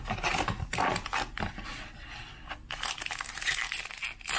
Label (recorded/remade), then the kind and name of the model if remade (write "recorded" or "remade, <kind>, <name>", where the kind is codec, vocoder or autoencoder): recorded